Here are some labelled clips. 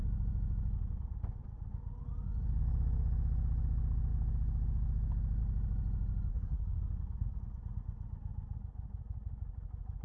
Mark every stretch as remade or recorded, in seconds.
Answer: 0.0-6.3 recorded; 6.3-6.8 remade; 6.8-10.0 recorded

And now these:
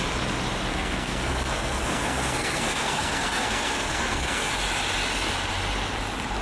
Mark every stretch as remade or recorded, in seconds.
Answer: 0.0-0.7 recorded; 0.7-4.5 remade; 4.5-6.4 recorded

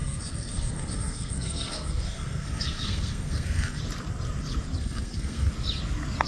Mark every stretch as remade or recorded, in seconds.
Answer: 0.0-3.8 remade; 3.8-4.8 recorded; 4.8-5.5 remade; 5.5-6.3 recorded